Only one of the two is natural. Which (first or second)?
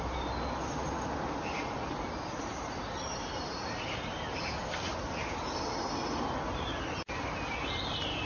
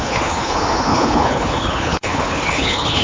first